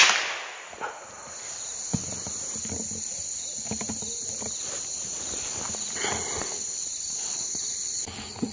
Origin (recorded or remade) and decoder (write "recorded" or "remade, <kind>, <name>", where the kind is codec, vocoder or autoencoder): recorded